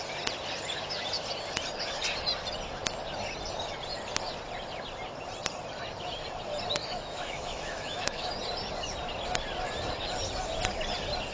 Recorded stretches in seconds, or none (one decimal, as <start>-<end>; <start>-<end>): 0.0-6.8; 8.3-11.3